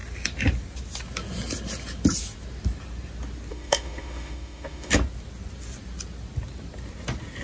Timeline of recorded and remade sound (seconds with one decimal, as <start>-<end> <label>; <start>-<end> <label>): 0.0-3.5 recorded; 3.5-4.9 remade; 4.9-7.4 recorded